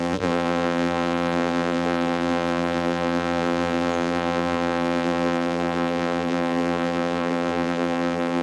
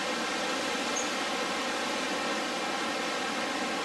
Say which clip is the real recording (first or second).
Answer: second